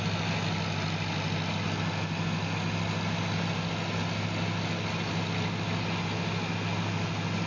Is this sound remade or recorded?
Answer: recorded